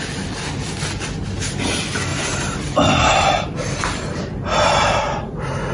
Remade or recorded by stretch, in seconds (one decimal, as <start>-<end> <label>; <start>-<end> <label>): 0.0-2.1 recorded; 2.1-5.0 remade; 5.0-5.7 recorded